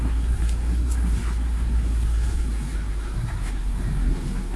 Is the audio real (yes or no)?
no